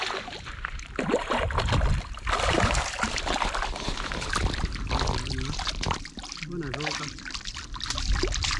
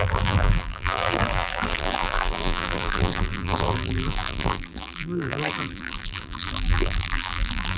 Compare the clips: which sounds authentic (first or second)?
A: first